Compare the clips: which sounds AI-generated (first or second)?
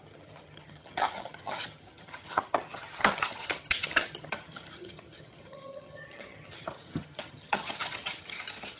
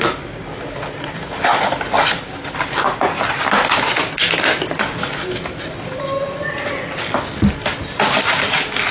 first